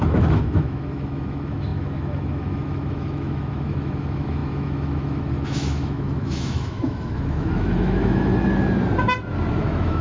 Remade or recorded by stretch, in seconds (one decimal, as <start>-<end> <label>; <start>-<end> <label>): 0.0-8.3 remade; 8.3-9.5 recorded; 9.5-10.0 remade